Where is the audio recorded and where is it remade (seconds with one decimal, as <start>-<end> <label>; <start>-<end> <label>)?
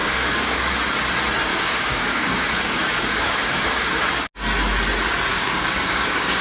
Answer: 0.0-0.7 remade; 0.7-1.5 recorded; 1.5-4.0 remade; 4.0-5.3 recorded; 5.3-6.4 remade